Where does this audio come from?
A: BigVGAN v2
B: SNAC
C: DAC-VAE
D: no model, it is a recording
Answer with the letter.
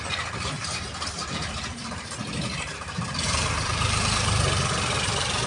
A